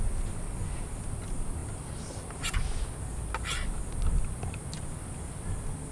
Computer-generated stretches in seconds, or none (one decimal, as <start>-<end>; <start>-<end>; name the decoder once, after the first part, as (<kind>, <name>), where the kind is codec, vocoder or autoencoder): none